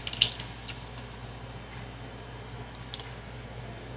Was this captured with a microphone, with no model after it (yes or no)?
yes